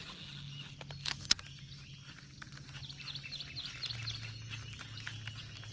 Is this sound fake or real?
real